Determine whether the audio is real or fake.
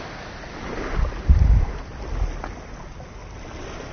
real